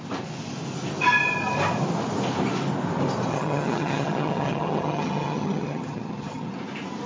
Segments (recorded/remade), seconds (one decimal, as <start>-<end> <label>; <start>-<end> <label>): 0.0-3.3 recorded; 3.3-6.5 remade; 6.5-7.1 recorded